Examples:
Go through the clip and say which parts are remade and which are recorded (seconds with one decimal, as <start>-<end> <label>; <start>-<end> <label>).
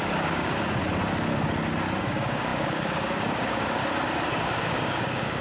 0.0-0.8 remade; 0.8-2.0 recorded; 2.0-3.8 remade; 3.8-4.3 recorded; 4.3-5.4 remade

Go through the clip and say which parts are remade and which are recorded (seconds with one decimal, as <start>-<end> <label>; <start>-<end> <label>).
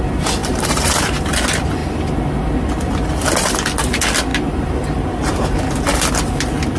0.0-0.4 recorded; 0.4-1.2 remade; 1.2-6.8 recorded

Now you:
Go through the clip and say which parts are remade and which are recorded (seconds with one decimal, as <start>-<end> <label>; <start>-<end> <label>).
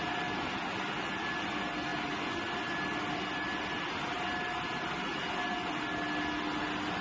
0.0-7.0 recorded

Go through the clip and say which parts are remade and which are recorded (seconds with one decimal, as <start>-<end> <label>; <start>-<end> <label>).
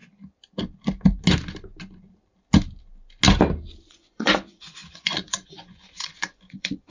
0.0-3.9 recorded; 3.9-6.9 remade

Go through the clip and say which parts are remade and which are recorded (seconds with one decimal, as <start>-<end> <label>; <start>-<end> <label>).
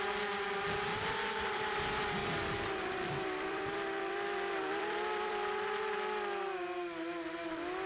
0.0-0.9 recorded; 0.9-1.8 remade; 1.8-2.2 recorded; 2.2-5.8 remade; 5.8-7.9 recorded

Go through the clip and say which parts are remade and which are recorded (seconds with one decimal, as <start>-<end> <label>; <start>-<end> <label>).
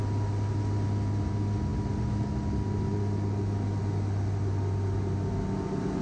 0.0-6.0 recorded